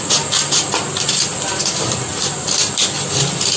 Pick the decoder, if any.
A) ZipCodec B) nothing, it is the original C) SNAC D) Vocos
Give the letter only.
B